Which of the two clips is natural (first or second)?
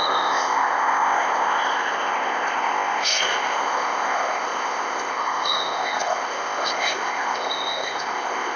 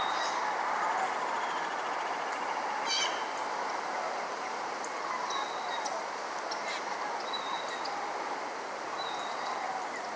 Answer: second